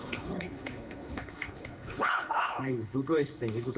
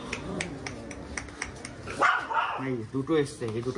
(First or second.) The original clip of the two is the second